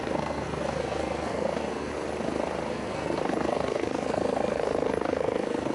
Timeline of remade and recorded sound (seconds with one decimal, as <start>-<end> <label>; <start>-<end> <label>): 0.0-1.9 remade; 1.9-2.7 recorded; 2.7-5.7 remade